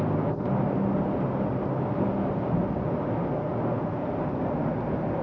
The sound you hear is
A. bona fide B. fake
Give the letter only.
A